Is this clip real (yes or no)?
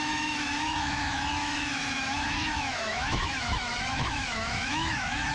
no